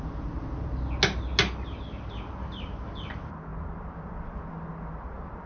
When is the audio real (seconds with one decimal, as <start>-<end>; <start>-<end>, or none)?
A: 0.0-5.5